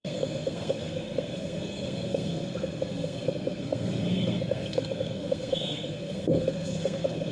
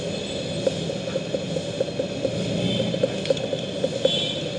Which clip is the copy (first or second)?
first